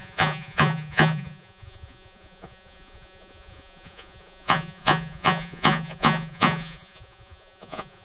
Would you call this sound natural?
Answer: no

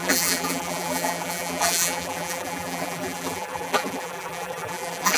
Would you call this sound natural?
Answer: no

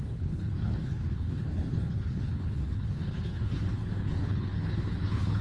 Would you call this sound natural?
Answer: no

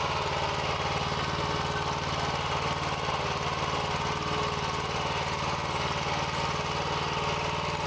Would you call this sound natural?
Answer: yes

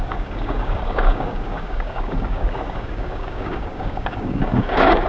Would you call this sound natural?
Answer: no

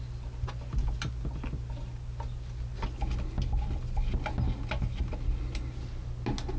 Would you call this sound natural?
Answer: yes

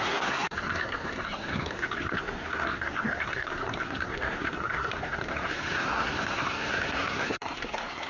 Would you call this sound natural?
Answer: no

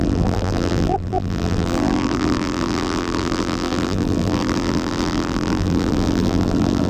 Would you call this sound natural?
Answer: no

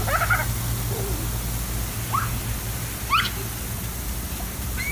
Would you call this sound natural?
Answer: yes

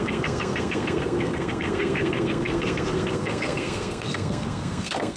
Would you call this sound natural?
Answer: no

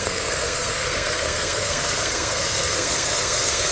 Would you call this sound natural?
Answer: no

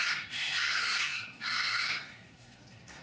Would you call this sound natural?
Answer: no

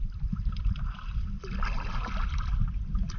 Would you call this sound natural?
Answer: yes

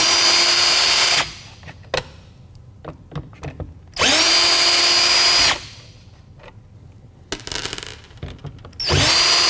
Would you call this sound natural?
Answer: yes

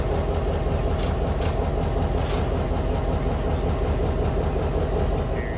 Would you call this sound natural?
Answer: yes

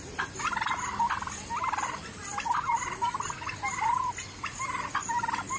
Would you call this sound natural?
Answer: yes